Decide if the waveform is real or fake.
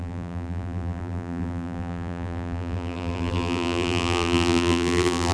fake